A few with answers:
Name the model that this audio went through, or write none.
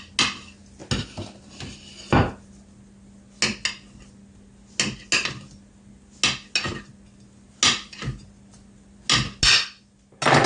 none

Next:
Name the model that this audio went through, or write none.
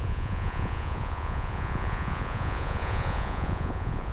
vocoder, Vocos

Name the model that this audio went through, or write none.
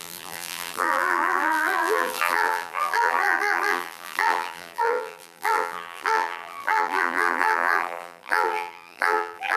vocoder, BigVGAN v2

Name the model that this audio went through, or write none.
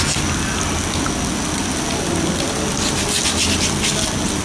none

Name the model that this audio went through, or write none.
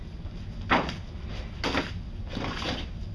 none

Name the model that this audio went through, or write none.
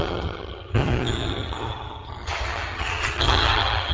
vocoder, HiFi-GAN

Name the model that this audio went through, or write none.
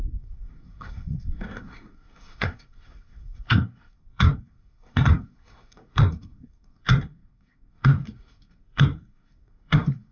codec, SNAC